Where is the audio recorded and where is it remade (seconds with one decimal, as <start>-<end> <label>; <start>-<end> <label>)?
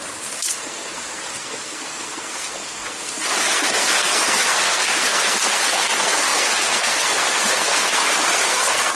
0.0-9.0 remade